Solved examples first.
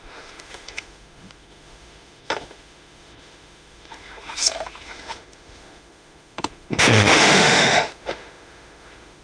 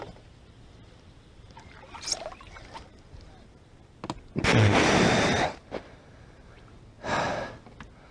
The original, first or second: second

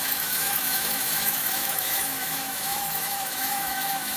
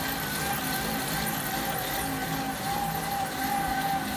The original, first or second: second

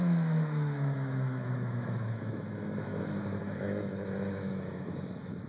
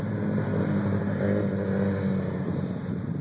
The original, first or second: second